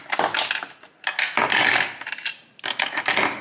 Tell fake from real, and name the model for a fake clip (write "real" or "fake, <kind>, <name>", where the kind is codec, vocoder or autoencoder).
real